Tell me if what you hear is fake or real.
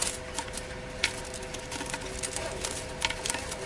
real